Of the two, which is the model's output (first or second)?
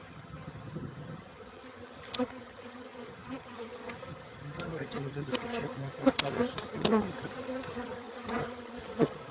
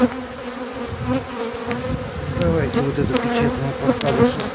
first